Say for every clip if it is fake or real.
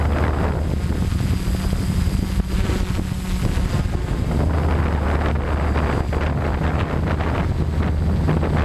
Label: real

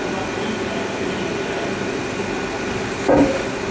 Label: real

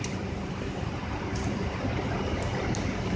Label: fake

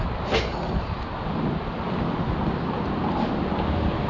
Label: real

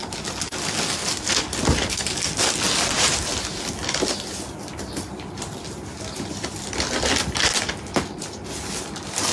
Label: real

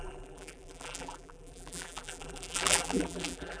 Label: fake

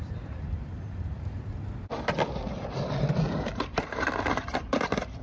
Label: fake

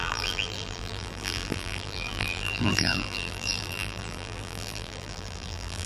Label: fake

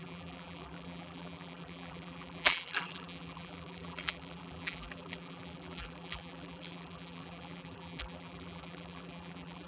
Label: fake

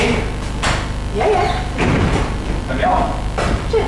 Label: real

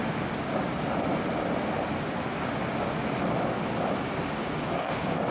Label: real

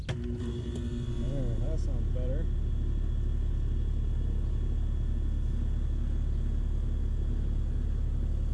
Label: real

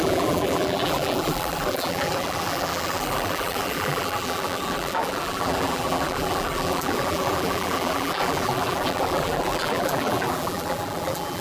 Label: fake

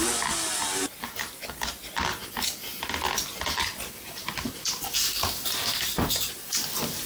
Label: fake